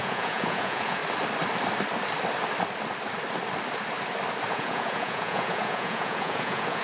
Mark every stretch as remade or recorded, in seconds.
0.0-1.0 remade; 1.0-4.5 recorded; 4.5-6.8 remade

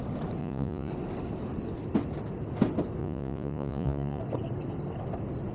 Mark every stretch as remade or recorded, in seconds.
0.0-0.4 recorded; 0.4-0.9 remade; 0.9-3.0 recorded; 3.0-4.2 remade; 4.2-5.5 recorded

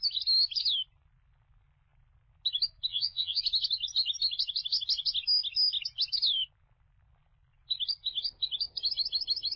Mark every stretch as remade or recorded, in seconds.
0.0-2.9 recorded; 2.9-3.4 remade; 3.4-9.6 recorded

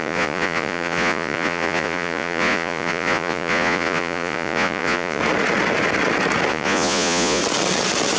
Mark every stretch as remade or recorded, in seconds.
0.0-5.2 remade; 5.2-6.5 recorded; 6.5-7.4 remade; 7.4-8.2 recorded

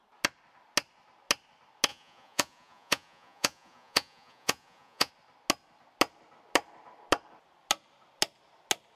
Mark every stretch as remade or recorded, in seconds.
0.0-1.9 recorded; 1.9-5.1 remade; 5.1-9.0 recorded

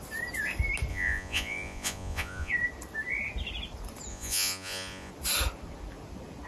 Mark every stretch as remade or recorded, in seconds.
0.0-0.9 recorded; 0.9-2.5 remade; 2.5-4.1 recorded; 4.1-5.1 remade; 5.1-6.5 recorded

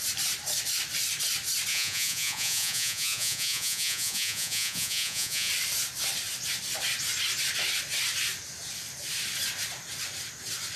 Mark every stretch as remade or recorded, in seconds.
0.0-1.7 recorded; 1.7-5.5 remade; 5.5-10.8 recorded

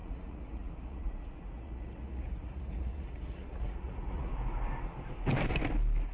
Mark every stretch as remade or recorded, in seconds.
0.0-4.3 remade; 4.3-6.1 recorded